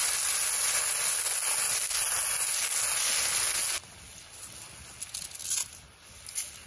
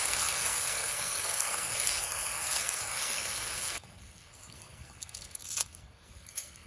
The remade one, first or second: second